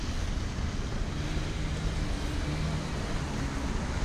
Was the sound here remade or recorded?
recorded